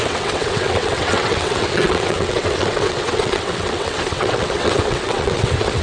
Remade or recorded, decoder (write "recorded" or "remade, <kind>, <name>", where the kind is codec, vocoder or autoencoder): remade, vocoder, WaveNeXt